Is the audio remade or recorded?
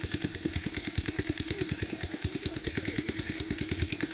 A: remade